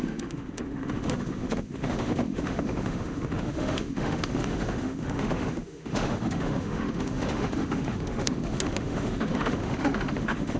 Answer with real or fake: fake